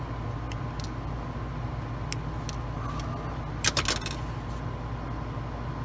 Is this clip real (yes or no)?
yes